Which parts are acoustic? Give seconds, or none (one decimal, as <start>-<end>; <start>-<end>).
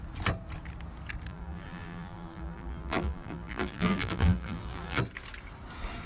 0.0-1.3; 5.0-6.1